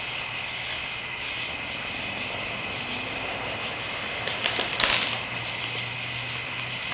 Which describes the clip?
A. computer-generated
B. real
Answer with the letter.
B